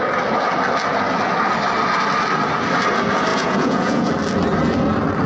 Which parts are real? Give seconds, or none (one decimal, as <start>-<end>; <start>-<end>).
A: 0.0-3.3; 4.1-5.3